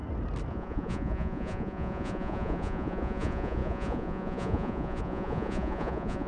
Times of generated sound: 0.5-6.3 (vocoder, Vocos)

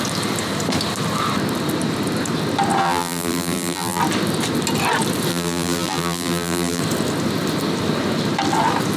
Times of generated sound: 2.8-4.0 (vocoder, BigVGAN v2); 5.3-6.8

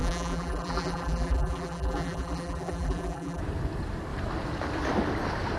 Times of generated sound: 0.0-3.4 (vocoder, BigVGAN v2)

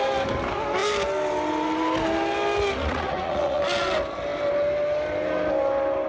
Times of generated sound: 2.8-3.6 (vocoder, Vocos)

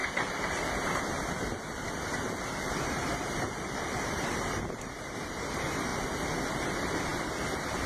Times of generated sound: 0.0-5.9 (vocoder, BigVGAN v2); 6.5-7.9

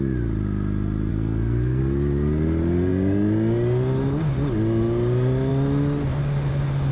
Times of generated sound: 1.1-1.8 (codec, SNAC)

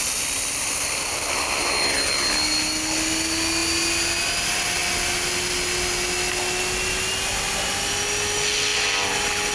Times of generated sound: none